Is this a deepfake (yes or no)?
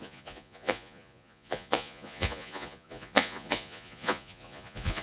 yes